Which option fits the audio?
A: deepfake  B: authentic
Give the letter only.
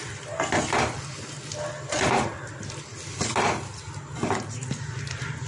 B